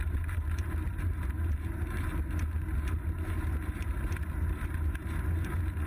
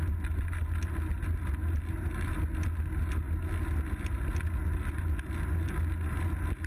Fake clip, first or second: first